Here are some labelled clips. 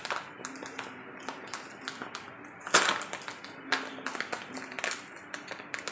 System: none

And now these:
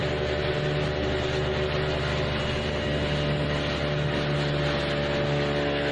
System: none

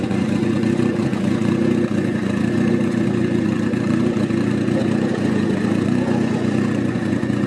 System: vocoder, Vocos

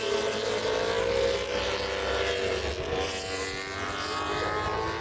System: none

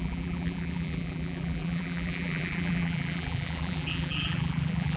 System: vocoder, BigVGAN v2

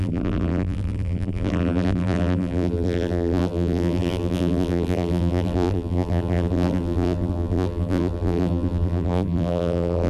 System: vocoder, BigVGAN v2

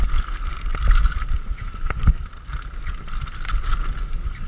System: none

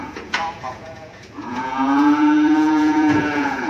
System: vocoder, Vocos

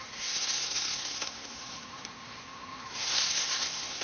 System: codec, SNAC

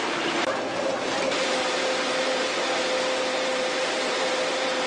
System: none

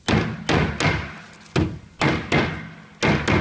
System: none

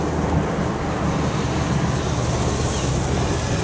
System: none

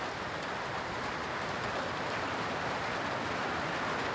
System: none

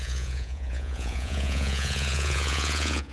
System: vocoder, Vocos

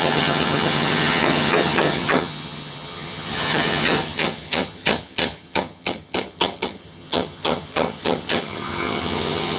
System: vocoder, HiFi-GAN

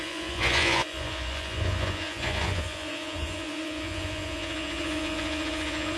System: vocoder, Vocos